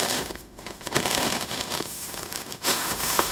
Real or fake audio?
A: fake